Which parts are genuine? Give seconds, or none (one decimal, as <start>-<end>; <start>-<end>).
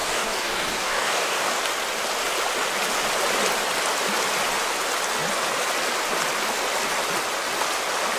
1.6-8.2